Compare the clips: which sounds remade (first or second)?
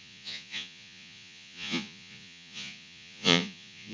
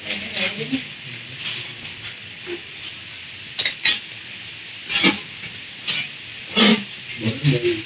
first